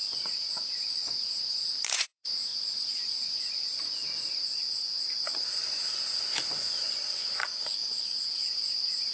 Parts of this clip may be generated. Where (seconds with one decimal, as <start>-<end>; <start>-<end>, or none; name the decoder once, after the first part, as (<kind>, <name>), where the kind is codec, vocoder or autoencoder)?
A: 0.0-9.1 (vocoder, Vocos)

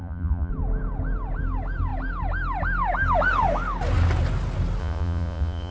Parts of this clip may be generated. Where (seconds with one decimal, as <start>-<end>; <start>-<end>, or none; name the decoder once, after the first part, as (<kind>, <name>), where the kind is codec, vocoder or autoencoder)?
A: 0.0-0.5 (vocoder, Vocos); 4.8-5.7

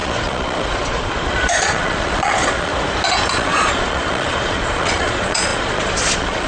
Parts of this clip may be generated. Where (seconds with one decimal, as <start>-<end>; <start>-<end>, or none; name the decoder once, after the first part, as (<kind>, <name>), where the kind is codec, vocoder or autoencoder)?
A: 0.0-2.7 (vocoder, Vocos); 3.3-6.5

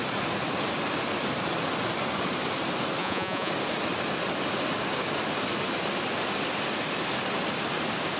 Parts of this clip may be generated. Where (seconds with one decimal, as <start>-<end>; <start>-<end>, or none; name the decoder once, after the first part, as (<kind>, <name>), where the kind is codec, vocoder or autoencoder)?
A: 3.0-3.5 (vocoder, Vocos)

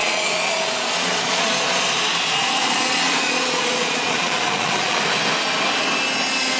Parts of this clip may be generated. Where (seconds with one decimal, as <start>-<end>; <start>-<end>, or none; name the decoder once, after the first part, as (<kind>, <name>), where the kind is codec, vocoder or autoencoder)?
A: 0.0-1.5 (vocoder, Vocos); 2.1-5.0

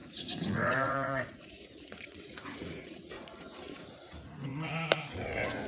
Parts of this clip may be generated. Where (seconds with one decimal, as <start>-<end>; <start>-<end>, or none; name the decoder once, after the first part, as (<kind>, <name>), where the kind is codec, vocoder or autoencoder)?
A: 0.0-4.5 (vocoder, Vocos); 5.1-5.7

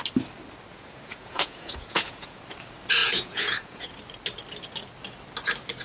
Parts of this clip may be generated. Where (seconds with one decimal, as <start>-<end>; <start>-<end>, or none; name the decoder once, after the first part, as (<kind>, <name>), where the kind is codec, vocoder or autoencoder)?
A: 0.7-2.4 (vocoder, Vocos); 3.0-3.9

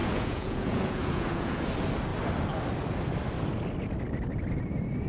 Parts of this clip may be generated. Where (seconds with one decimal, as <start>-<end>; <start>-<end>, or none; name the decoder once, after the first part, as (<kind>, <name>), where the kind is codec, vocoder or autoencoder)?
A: 0.0-1.7 (vocoder, Vocos)